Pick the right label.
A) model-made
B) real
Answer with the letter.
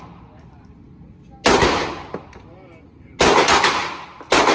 B